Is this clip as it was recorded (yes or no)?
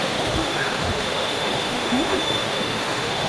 no